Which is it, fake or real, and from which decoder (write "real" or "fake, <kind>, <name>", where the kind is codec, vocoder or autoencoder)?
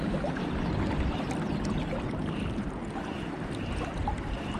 real